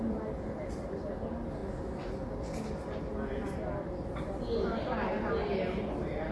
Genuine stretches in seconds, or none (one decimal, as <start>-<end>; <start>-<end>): 0.0-6.3